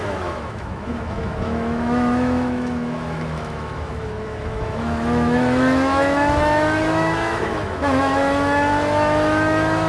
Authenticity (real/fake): fake